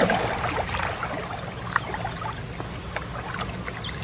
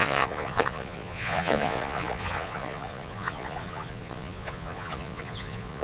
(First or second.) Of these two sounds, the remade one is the second